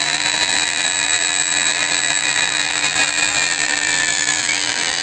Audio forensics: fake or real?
fake